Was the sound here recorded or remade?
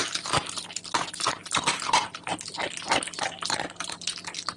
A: recorded